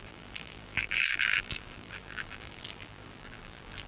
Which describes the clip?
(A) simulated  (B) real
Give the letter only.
A